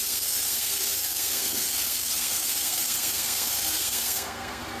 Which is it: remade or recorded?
remade